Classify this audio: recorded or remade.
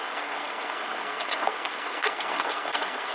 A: remade